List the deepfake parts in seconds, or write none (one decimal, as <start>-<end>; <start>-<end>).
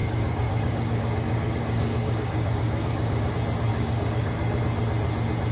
0.0-3.3; 3.7-4.6